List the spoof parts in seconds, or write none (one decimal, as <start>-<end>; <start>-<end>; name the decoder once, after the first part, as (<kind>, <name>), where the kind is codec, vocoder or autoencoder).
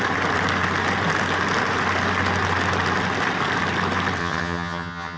4.2-5.2 (vocoder, HiFi-GAN)